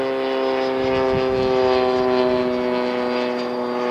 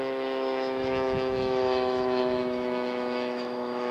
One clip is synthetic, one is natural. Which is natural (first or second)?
first